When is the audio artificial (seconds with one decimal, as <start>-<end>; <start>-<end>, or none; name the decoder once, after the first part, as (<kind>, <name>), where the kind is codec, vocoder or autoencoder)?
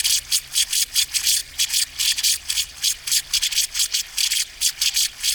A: none